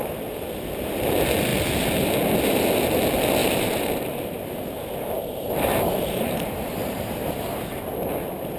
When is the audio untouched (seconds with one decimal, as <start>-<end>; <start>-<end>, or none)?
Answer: 0.0-3.4; 7.8-8.6